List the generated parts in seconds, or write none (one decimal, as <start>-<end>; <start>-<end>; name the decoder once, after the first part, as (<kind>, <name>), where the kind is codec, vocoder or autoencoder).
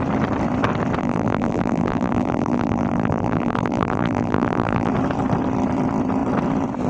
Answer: 1.0-4.9 (vocoder, BigVGAN v2)